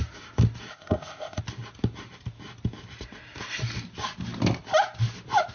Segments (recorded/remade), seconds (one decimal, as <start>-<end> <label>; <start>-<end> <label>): 0.0-0.7 recorded; 0.7-1.4 remade; 1.4-5.5 recorded